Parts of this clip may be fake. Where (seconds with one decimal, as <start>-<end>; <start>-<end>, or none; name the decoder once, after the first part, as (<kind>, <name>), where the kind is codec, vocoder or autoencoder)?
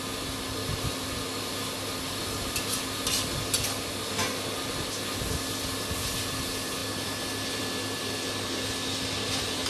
none